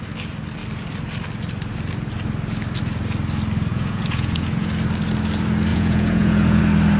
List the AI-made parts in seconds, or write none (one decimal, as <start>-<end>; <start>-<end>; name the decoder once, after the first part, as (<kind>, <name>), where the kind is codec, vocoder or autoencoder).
3.7-4.7 (vocoder, Vocos); 5.7-6.6